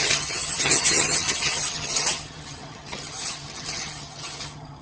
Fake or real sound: fake